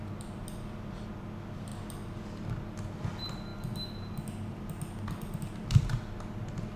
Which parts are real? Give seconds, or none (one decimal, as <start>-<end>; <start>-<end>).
0.0-6.8